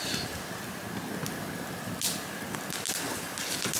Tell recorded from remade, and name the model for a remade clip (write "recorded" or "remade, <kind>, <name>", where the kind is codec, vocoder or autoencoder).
recorded